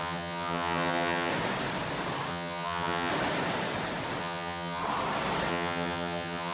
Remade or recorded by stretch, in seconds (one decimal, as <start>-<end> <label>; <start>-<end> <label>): 0.0-1.3 remade; 1.3-2.3 recorded; 2.3-3.1 remade; 3.1-4.2 recorded; 4.2-4.8 remade; 4.8-5.5 recorded; 5.5-6.5 remade